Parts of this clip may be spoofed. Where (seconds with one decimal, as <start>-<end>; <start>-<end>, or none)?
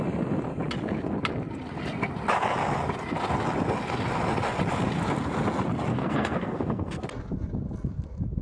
5.9-7.0